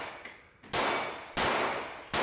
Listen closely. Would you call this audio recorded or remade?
recorded